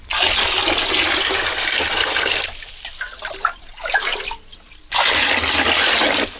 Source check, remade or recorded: recorded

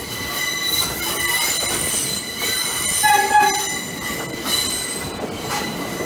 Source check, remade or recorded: recorded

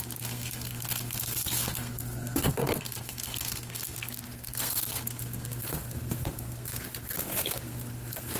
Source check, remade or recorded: remade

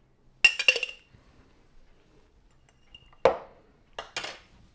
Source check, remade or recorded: recorded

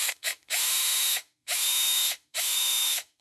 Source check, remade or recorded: remade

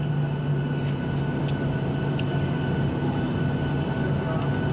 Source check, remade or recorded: recorded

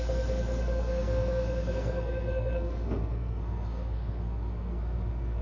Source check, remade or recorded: remade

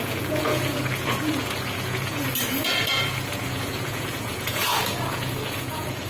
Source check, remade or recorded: remade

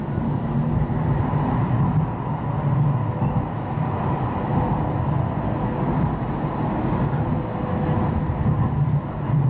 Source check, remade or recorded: recorded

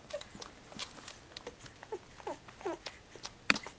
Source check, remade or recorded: recorded